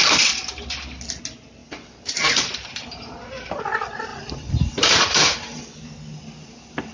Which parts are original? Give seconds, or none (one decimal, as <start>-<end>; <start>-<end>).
0.0-1.6; 3.6-4.1; 5.6-6.9